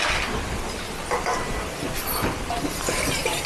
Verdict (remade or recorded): recorded